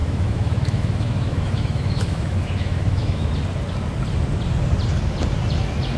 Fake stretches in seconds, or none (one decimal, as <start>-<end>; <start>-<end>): 0.0-3.3